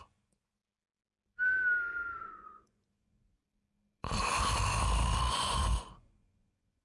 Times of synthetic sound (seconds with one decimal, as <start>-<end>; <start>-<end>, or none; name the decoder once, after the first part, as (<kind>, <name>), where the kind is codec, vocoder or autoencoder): 0.0-0.6 (vocoder, Vocos); 2.2-3.4; 5.3-6.8

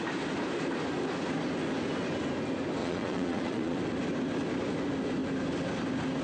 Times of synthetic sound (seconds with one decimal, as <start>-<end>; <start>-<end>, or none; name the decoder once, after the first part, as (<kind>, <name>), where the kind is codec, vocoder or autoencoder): 2.8-3.8 (vocoder, Vocos)

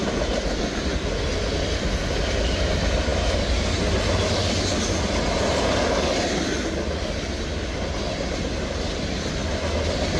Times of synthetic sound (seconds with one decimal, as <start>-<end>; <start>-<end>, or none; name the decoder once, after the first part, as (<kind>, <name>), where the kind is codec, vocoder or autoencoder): none

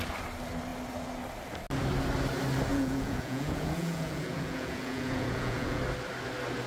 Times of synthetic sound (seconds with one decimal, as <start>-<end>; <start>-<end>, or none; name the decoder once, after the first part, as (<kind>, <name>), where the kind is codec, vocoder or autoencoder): 2.7-5.8 (vocoder, Vocos)